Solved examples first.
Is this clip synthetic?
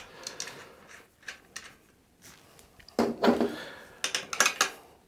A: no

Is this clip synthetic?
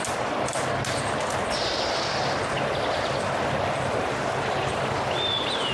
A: no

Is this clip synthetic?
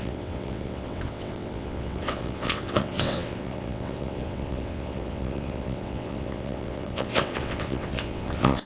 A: yes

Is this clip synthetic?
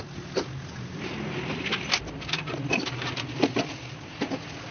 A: no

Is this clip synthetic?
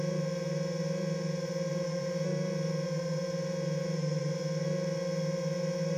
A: yes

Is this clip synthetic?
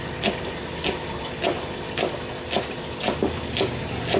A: no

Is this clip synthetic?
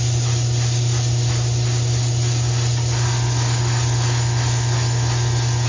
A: no